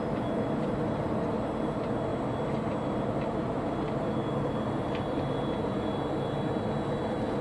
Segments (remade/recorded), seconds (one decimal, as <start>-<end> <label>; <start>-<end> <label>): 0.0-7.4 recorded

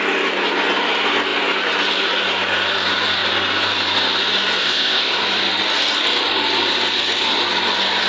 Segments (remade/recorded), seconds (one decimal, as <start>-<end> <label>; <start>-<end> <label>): 0.0-4.6 recorded; 4.6-5.1 remade; 5.1-8.1 recorded

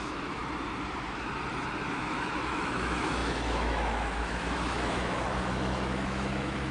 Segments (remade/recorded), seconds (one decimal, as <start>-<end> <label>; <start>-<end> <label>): 0.0-0.4 remade; 0.4-1.9 recorded; 1.9-6.7 remade

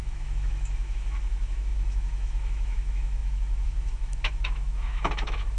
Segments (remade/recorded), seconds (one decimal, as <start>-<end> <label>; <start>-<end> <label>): 0.0-5.6 remade

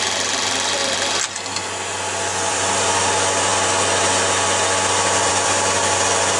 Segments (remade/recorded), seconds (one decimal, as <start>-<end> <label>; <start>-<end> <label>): 0.0-0.8 remade; 0.8-2.5 recorded; 2.5-3.5 remade; 3.5-5.3 recorded; 5.3-6.4 remade